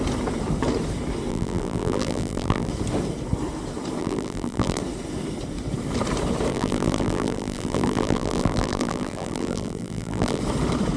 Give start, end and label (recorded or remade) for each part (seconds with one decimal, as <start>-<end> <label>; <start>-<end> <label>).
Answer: 0.0-1.3 recorded; 1.3-2.7 remade; 2.7-4.0 recorded; 4.0-4.8 remade; 4.8-6.5 recorded; 6.5-10.4 remade; 10.4-11.0 recorded